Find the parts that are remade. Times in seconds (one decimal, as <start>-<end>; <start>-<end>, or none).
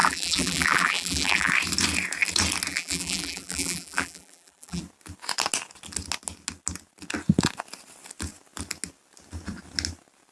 0.0-1.5; 2.7-4.8